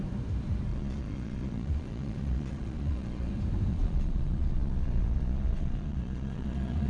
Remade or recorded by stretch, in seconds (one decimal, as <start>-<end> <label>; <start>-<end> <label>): 0.0-0.7 recorded; 0.7-3.3 remade; 3.3-3.7 recorded; 3.7-6.9 remade